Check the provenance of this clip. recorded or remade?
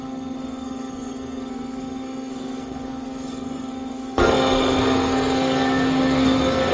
remade